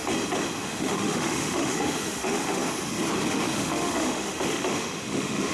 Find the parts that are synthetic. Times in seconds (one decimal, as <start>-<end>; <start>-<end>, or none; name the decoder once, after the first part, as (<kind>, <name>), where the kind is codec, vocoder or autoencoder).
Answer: 0.6-2.6 (autoencoder, DAC-VAE); 3.3-5.5